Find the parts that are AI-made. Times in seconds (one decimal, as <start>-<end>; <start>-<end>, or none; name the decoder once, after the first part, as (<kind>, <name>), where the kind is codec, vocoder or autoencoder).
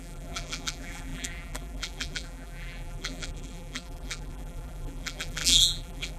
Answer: 0.0-6.2 (vocoder, BigVGAN v2)